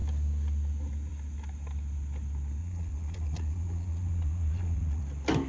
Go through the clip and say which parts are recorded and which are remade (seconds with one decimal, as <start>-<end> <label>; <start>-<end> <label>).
0.0-2.6 recorded; 2.6-5.0 remade; 5.0-5.5 recorded